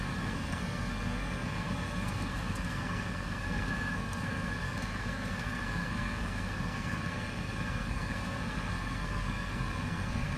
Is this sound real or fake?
fake